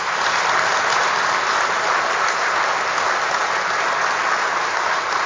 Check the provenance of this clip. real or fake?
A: real